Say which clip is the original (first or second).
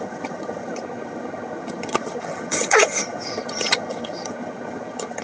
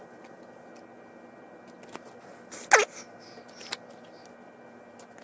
second